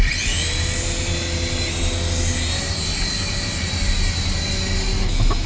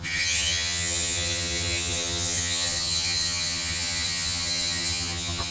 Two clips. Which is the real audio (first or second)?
first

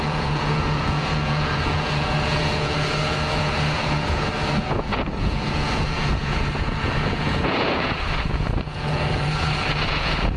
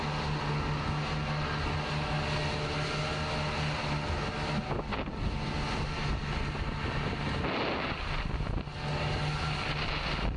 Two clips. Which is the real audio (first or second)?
second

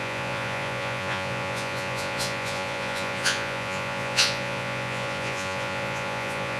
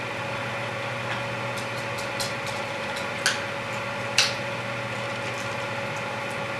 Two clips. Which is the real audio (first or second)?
second